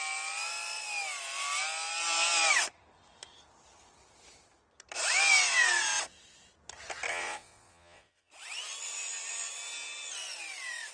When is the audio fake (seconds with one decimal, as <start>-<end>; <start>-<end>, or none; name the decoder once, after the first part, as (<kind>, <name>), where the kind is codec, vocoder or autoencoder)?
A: 7.1-8.3 (vocoder, Vocos)

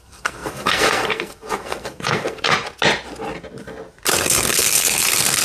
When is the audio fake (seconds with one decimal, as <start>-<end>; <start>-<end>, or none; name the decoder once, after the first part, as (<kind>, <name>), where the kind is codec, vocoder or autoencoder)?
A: 0.0-2.5 (codec, SNAC); 4.1-5.4

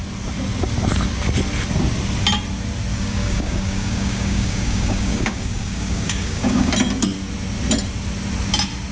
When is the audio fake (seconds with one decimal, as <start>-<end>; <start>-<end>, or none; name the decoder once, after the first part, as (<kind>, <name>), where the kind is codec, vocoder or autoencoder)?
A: 2.9-6.7 (codec, DAC)

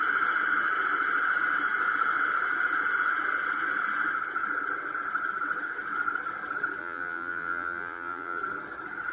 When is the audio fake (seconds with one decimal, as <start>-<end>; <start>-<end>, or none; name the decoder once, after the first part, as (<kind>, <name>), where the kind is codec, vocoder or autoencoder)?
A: 6.8-8.4 (vocoder, BigVGAN v2)

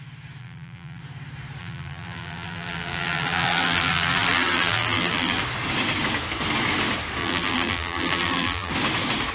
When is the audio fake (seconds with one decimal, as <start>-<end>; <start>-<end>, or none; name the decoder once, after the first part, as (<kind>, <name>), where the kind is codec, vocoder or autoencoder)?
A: 0.4-1.0 (vocoder, BigVGAN v2); 1.6-5.4; 7.2-8.7

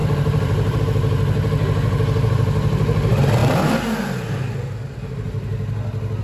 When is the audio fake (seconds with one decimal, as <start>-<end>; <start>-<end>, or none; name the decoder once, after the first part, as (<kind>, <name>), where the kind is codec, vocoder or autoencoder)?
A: 0.0-0.8 (vocoder, BigVGAN v2)

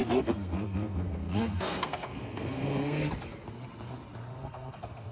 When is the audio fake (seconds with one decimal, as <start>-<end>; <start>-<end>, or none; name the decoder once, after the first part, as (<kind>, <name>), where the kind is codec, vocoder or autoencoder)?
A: 0.0-3.1 (codec, SNAC); 4.3-5.1

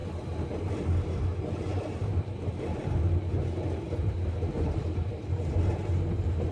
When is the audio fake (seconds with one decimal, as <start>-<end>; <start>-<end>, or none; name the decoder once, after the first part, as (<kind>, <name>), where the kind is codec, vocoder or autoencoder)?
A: 1.7-5.6 (vocoder, BigVGAN v2)